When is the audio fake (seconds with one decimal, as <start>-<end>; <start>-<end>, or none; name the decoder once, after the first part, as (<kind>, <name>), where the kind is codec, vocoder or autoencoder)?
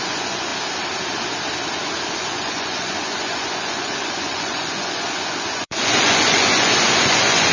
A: 0.0-0.5 (vocoder, Vocos); 2.1-7.5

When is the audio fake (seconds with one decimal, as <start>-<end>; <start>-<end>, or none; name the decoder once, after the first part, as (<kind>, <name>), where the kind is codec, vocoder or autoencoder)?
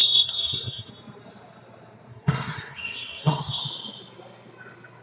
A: 0.0-0.9 (codec, SNAC); 2.1-3.6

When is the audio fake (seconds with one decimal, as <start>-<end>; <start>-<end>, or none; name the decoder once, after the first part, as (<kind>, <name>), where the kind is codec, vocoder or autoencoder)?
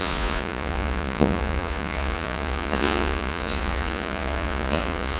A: 0.0-5.2 (vocoder, Vocos)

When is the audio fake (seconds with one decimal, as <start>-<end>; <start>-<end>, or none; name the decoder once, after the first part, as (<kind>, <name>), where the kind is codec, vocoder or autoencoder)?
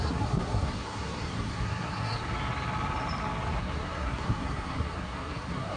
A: 0.0-2.2 (codec, SNAC); 3.6-5.8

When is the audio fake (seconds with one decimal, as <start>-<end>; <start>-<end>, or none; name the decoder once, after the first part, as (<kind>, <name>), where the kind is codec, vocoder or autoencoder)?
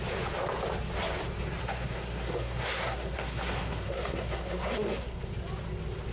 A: 1.6-5.3 (codec, SNAC)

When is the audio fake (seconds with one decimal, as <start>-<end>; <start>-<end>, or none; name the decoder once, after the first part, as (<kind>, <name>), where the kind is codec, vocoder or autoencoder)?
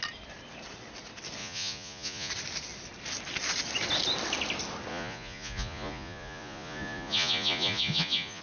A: 1.4-2.3 (vocoder, Vocos); 4.9-8.4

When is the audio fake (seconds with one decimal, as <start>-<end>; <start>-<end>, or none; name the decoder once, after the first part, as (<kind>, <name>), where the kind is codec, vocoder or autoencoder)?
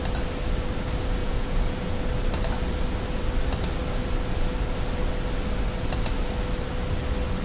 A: 1.2-2.0 (vocoder, Vocos)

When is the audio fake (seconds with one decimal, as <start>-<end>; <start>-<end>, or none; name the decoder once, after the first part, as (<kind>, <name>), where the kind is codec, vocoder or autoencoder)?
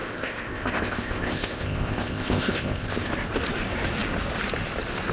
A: 0.0-3.1 (codec, ZipCodec)